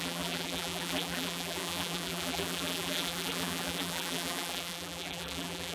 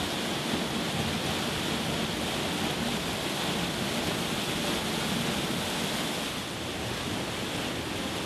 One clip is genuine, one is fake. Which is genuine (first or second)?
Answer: second